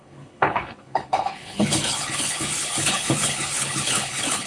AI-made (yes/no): yes